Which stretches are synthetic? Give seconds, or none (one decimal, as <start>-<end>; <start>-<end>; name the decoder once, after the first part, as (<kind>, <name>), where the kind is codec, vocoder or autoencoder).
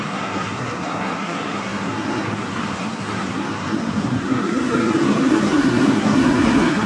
0.0-6.9 (codec, SNAC)